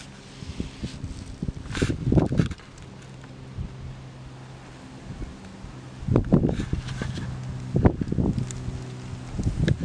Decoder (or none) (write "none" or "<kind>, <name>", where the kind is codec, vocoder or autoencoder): none